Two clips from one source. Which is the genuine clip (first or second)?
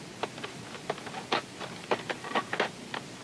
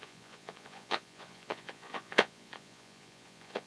first